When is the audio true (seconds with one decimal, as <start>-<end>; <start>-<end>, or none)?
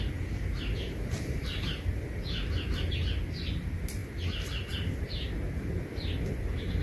0.0-0.8; 2.0-6.8